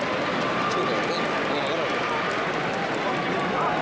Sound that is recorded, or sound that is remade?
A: recorded